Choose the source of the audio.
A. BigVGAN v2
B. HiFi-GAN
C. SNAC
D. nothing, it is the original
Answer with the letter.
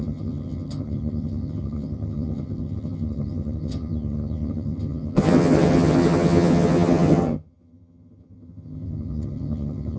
B